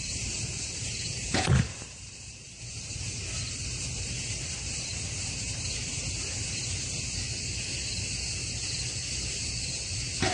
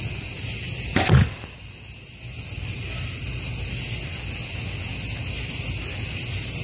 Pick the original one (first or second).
second